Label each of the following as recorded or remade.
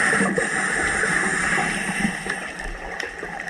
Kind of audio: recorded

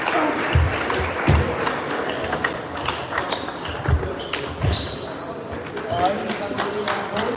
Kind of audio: recorded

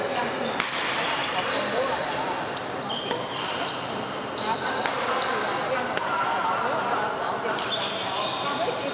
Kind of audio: recorded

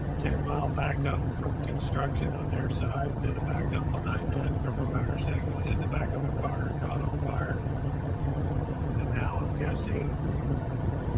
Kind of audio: remade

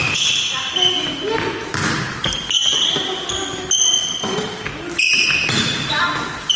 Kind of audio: recorded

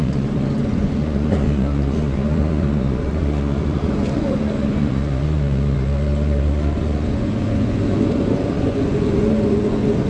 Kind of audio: remade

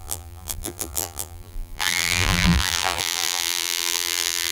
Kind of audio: remade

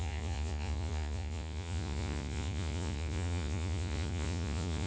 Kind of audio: remade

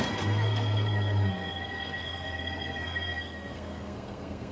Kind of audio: remade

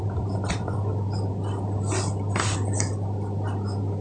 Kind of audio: remade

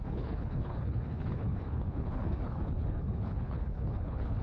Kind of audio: remade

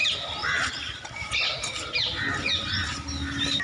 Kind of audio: remade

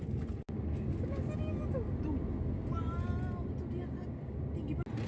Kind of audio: recorded